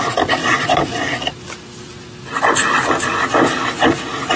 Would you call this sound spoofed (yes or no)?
no